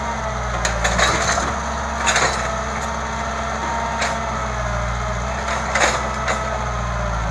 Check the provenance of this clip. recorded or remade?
recorded